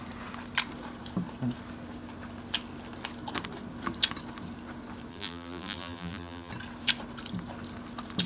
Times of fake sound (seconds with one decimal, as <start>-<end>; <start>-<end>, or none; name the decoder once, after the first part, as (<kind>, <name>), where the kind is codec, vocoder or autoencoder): 5.1-6.5 (vocoder, BigVGAN v2)